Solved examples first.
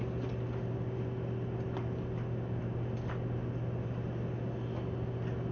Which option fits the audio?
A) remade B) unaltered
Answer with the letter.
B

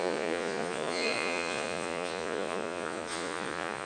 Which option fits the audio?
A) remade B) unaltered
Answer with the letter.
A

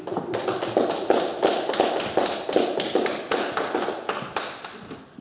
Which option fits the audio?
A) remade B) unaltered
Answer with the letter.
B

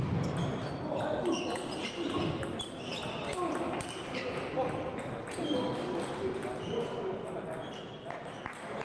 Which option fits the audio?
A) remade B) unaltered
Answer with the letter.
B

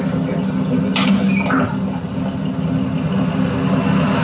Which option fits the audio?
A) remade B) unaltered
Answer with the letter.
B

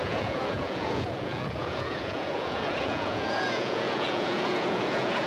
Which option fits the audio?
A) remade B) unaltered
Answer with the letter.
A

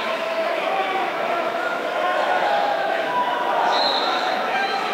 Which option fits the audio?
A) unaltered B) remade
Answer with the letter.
B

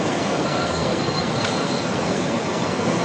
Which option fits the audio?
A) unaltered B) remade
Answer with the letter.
B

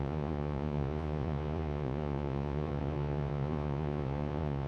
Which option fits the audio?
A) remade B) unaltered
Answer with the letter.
A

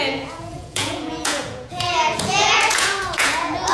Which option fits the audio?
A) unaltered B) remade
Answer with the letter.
B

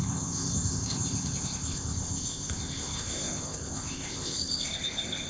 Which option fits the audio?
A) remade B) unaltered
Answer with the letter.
A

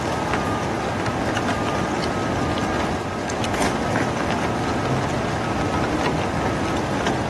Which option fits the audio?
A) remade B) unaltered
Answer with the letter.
B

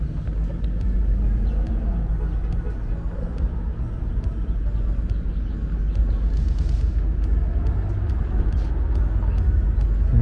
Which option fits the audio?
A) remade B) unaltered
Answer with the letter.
B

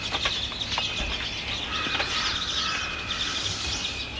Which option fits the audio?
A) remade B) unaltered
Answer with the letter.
B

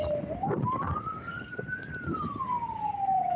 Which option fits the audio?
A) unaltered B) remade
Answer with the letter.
A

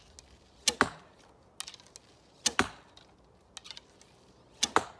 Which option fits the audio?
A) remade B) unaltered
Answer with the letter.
B